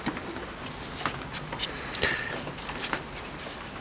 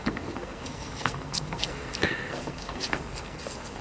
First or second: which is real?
first